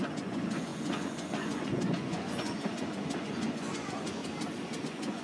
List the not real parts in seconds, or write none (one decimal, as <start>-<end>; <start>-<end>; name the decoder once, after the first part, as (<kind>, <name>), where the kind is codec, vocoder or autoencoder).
0.0-4.2 (vocoder, Vocos); 4.8-5.2